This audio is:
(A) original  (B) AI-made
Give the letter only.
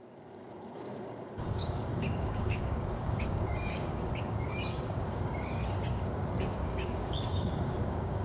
B